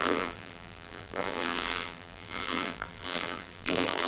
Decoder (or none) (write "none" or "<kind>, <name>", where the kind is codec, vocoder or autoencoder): vocoder, BigVGAN v2